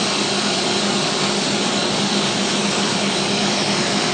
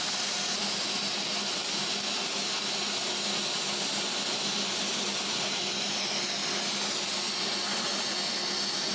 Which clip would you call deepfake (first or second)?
first